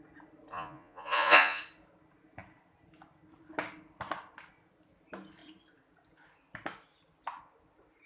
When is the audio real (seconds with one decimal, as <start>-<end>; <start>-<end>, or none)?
0.0-0.5; 1.6-8.1